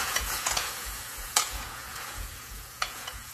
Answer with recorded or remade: remade